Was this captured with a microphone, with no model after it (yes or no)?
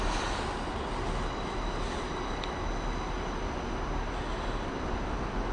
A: yes